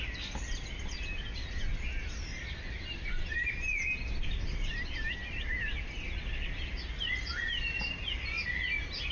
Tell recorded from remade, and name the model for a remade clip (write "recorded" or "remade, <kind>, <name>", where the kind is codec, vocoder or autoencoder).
recorded